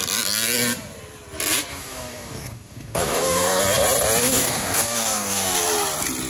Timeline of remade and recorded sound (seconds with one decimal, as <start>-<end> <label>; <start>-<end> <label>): 0.0-1.7 recorded; 1.7-3.6 remade; 3.6-4.2 recorded; 4.2-5.6 remade; 5.6-6.3 recorded